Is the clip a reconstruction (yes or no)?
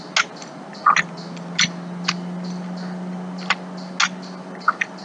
no